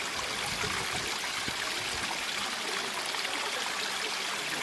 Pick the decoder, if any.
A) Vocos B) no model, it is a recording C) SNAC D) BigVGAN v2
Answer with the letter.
B